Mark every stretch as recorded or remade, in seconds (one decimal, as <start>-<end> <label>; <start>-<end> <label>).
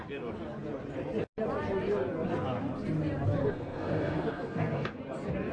0.0-3.4 recorded; 3.4-5.0 remade; 5.0-5.5 recorded